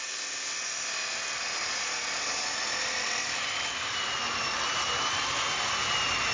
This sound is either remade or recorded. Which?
recorded